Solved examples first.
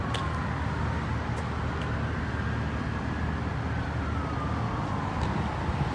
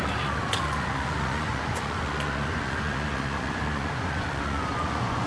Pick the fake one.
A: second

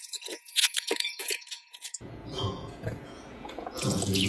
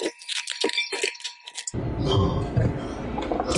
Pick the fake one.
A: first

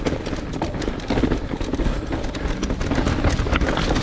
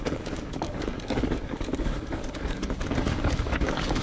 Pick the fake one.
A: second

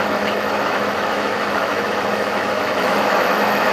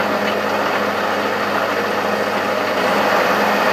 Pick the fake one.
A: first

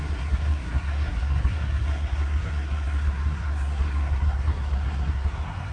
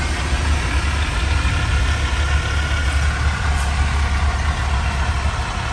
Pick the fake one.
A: first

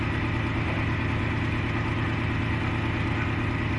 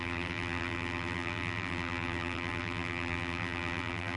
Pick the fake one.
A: second